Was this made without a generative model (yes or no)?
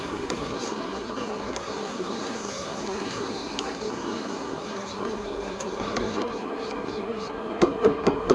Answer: no